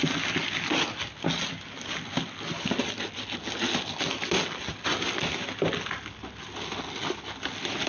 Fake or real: real